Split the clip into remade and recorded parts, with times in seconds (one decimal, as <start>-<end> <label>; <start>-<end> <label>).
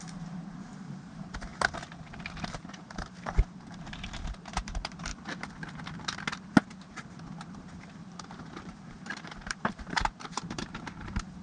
0.0-1.5 remade; 1.5-2.7 recorded; 2.7-5.1 remade; 5.1-7.3 recorded; 7.3-11.4 remade